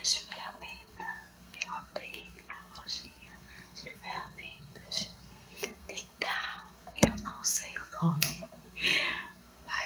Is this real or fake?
fake